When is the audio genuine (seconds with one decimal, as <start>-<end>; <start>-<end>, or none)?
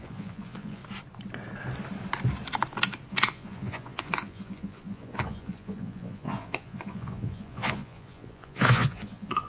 0.8-3.1